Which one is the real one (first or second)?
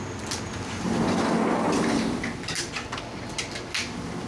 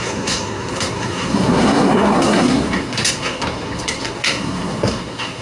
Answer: first